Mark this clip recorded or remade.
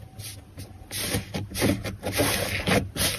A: recorded